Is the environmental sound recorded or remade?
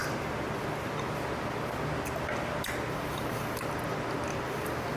recorded